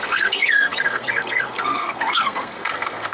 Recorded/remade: remade